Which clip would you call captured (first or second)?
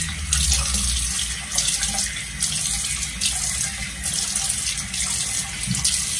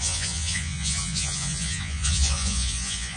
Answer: first